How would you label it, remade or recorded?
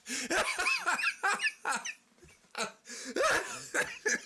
recorded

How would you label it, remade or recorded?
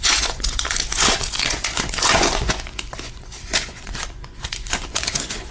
remade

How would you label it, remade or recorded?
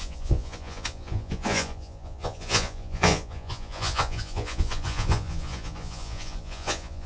remade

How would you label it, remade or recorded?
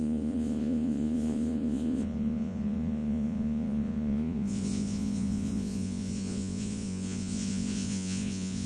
remade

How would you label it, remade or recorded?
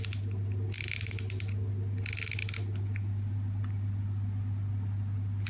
recorded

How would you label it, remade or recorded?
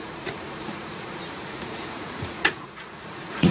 remade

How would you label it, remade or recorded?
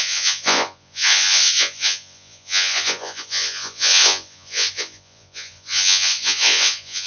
remade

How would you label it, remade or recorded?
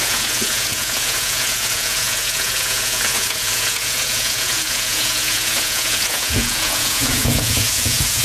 remade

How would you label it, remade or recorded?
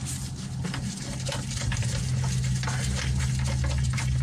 recorded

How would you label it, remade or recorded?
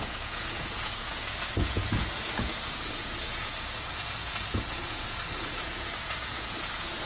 remade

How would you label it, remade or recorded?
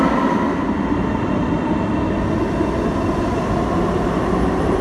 recorded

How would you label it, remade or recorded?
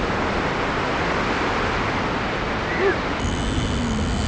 recorded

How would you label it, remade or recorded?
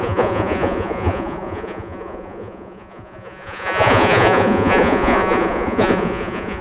remade